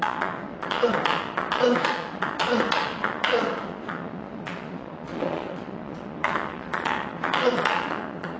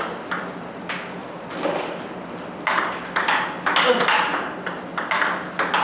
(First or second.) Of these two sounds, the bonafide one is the second